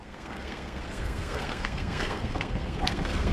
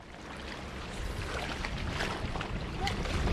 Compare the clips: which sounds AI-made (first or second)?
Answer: first